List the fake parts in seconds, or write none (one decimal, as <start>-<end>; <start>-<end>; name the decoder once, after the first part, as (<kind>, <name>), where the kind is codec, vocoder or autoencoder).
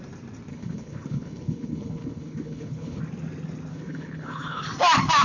0.5-3.0 (codec, HILCodec); 3.7-4.6